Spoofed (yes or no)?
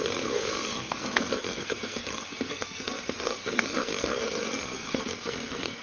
yes